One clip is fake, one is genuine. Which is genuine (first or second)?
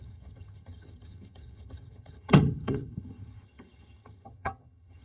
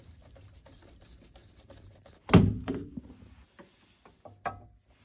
second